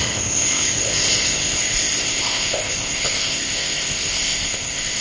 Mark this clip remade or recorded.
remade